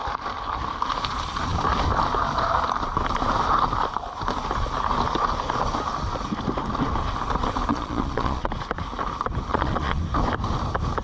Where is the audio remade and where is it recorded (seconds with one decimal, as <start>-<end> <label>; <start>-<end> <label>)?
0.0-7.7 recorded; 7.7-8.5 remade; 8.5-9.5 recorded; 9.5-10.0 remade; 10.0-11.0 recorded